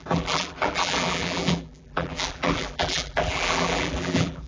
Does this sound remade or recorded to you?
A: remade